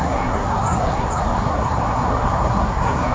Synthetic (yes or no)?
yes